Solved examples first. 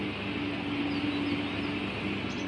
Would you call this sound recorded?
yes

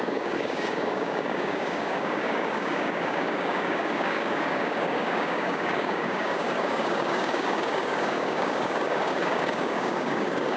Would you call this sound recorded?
no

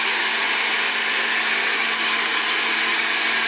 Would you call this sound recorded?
yes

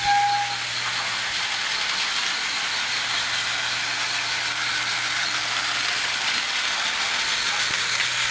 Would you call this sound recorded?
yes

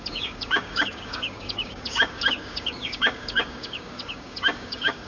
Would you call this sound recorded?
no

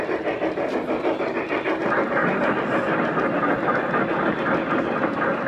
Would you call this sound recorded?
yes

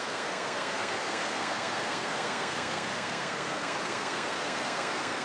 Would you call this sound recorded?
no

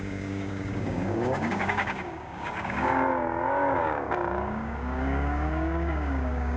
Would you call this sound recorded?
no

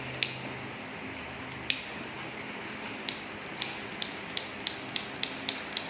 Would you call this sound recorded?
yes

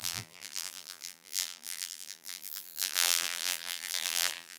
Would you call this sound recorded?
no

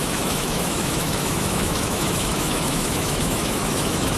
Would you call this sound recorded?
no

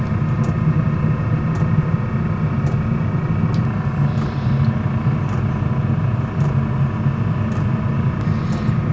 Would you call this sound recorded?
yes